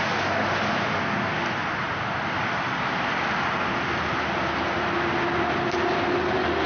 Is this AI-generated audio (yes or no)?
no